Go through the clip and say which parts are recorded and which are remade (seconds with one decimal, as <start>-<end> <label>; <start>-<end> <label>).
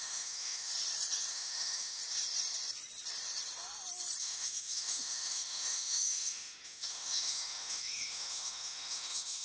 0.0-0.7 remade; 0.7-1.3 recorded; 1.3-2.0 remade; 2.0-4.2 recorded; 4.2-9.4 remade